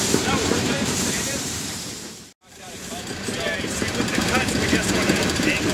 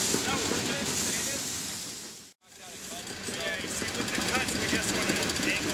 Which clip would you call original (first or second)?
second